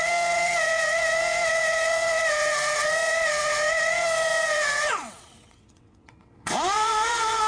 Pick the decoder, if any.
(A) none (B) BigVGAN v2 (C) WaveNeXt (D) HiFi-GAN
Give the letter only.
C